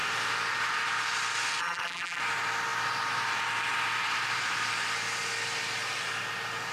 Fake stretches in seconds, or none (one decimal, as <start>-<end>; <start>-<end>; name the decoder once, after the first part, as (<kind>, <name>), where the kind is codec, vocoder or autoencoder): 1.6-2.2 (vocoder, BigVGAN v2)